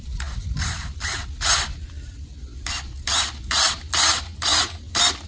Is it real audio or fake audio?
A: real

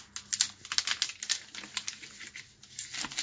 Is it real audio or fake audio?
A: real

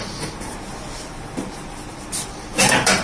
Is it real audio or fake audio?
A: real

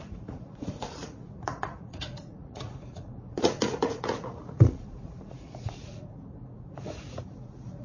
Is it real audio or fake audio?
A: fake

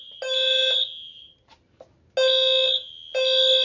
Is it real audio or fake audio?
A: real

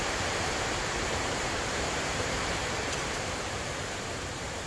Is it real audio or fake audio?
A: fake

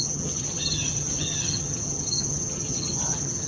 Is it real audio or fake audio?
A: fake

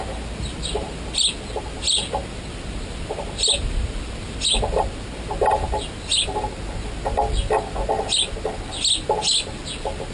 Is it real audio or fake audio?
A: real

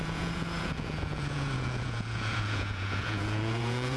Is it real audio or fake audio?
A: fake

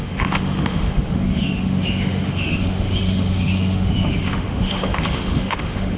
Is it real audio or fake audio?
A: fake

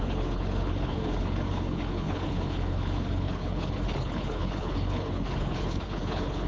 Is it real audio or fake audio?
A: fake